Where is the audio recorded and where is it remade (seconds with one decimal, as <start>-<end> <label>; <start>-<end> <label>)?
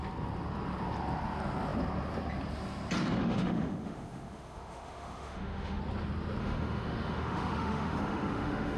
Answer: 0.0-3.2 recorded; 3.2-5.8 remade; 5.8-6.4 recorded; 6.4-8.8 remade